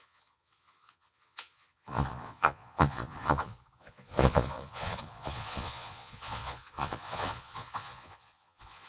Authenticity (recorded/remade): remade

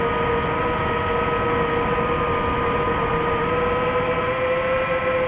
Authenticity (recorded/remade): recorded